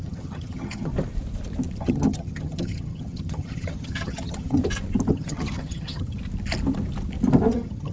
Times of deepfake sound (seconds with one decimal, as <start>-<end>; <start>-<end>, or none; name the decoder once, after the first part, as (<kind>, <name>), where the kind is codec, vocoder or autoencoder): 0.0-0.9 (vocoder, HiFi-GAN); 1.8-4.6; 5.1-6.2; 7.5-7.9